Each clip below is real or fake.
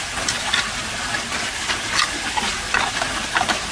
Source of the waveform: real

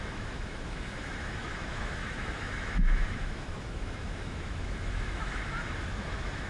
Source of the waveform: fake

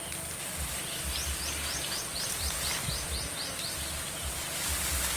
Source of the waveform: real